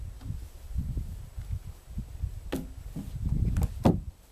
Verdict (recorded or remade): recorded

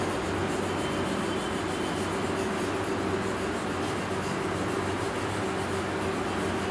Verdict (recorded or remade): recorded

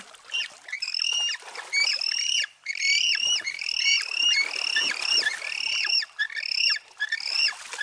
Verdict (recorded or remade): remade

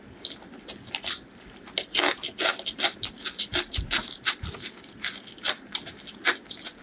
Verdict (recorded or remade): recorded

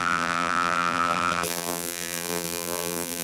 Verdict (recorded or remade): remade